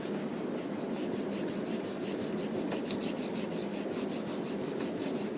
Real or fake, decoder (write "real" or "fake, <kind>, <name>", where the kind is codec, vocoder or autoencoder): real